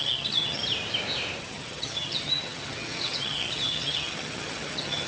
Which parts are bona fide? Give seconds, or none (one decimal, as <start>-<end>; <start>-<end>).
0.6-1.4